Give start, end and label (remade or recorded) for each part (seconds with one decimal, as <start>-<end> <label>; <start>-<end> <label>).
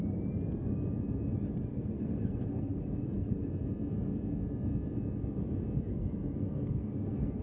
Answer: 0.0-1.7 recorded; 1.7-3.5 remade; 3.5-5.9 recorded; 5.9-7.4 remade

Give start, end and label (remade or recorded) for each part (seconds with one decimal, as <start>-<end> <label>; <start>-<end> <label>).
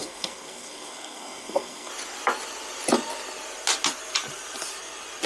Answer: 0.0-1.9 remade; 1.9-5.3 recorded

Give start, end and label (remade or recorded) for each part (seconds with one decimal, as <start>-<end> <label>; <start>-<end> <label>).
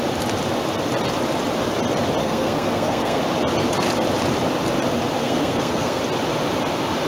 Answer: 0.0-2.2 recorded; 2.2-3.2 remade; 3.2-5.2 recorded; 5.2-6.0 remade; 6.0-7.1 recorded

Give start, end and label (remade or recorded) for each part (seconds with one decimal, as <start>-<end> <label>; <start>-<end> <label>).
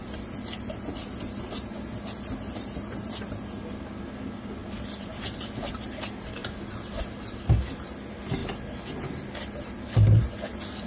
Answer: 0.0-10.9 recorded